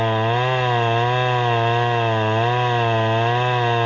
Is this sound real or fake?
real